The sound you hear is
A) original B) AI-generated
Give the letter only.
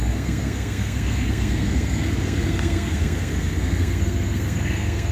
B